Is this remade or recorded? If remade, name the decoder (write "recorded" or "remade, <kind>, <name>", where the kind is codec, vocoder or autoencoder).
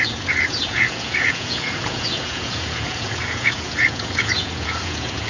remade, vocoder, Vocos